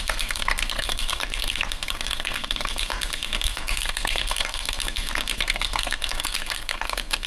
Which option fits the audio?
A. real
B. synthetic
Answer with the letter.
B